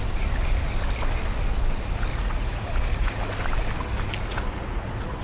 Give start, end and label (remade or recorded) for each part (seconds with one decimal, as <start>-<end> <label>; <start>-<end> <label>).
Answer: 0.0-2.1 recorded; 2.1-3.1 remade; 3.1-4.3 recorded; 4.3-5.2 remade